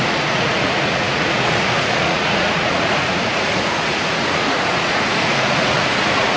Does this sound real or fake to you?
fake